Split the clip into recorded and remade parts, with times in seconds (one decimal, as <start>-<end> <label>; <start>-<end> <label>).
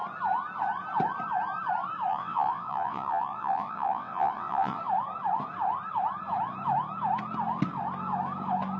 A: 0.0-2.1 recorded; 2.1-4.8 remade; 4.8-8.8 recorded